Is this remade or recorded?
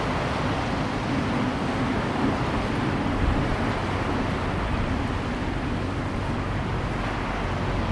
recorded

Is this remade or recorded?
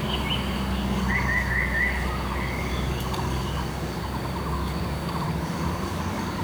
remade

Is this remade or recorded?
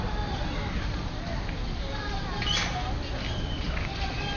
recorded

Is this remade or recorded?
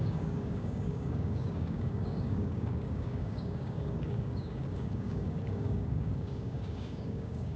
remade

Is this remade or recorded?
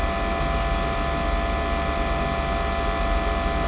recorded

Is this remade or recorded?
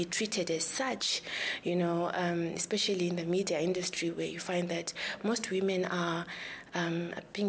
recorded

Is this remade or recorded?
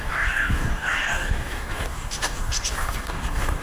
remade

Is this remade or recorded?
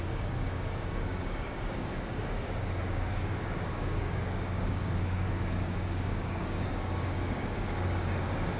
remade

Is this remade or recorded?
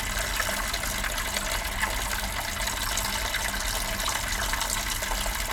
recorded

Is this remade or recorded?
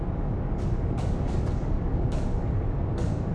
remade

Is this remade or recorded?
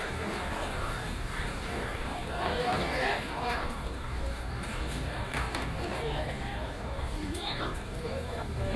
remade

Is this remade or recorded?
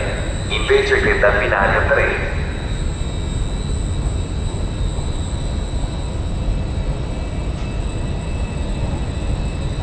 recorded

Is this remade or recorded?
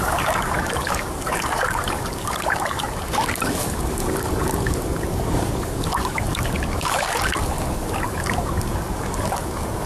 remade